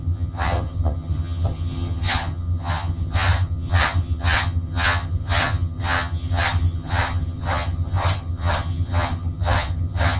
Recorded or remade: remade